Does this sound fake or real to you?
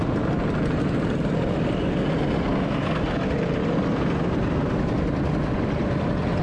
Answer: real